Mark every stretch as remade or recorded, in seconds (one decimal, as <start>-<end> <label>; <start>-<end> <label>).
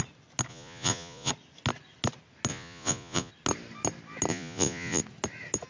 0.0-0.5 recorded; 0.5-1.3 remade; 1.3-2.5 recorded; 2.5-3.3 remade; 3.3-4.3 recorded; 4.3-5.0 remade; 5.0-5.7 recorded